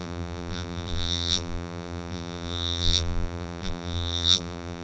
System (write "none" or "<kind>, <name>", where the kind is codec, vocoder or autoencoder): vocoder, BigVGAN v2